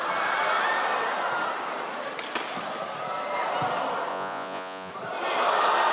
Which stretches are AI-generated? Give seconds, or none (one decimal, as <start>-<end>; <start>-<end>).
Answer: 4.1-4.9